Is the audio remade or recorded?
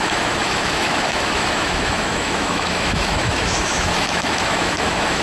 remade